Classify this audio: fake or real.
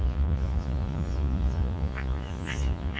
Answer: fake